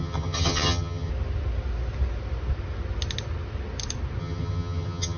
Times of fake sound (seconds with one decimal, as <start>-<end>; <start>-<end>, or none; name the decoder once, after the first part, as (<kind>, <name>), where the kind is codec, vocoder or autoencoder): 0.0-1.1 (vocoder, HiFi-GAN); 4.2-5.2